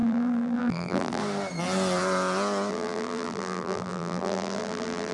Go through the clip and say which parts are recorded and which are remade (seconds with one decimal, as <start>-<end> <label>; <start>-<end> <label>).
0.0-1.2 remade; 1.2-2.7 recorded; 2.7-5.1 remade